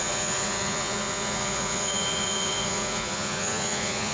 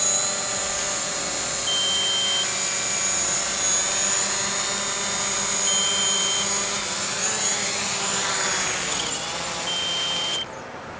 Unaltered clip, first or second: second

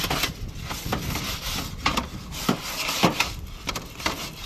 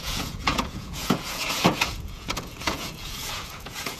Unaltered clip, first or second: first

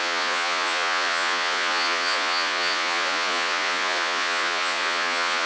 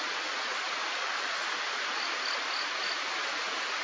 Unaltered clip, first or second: second